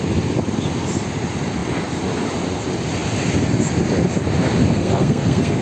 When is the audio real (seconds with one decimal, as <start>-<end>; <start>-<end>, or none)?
0.0-4.6